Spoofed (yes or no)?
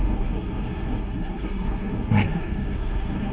yes